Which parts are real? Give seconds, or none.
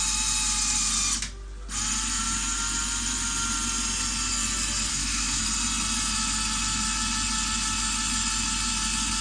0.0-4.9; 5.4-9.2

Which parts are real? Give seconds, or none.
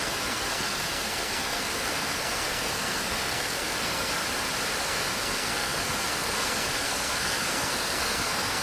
4.2-4.8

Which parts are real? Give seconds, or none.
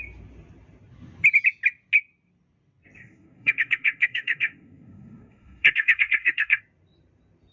0.0-3.0; 6.6-7.5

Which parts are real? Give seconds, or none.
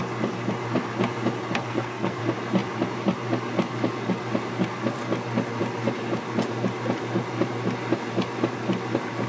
0.0-1.6; 2.2-9.3